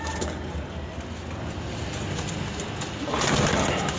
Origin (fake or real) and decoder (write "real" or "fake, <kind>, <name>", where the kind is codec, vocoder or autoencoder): real